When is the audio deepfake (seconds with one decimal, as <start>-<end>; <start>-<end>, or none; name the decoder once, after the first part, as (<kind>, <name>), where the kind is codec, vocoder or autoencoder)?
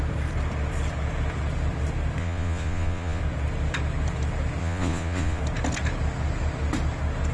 2.2-3.2 (vocoder, Vocos); 4.6-5.4